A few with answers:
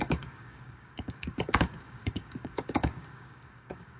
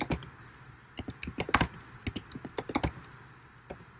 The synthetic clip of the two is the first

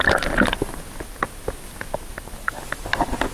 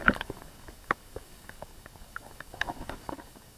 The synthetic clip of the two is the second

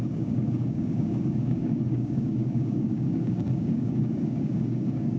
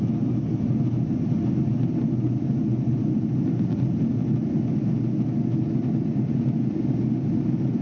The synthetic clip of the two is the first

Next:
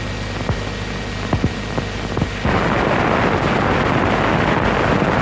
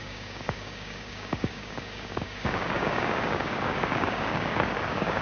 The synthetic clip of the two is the second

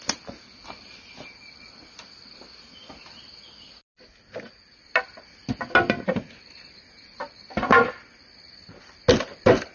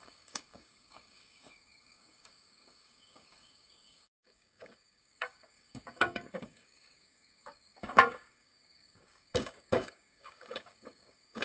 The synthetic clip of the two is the second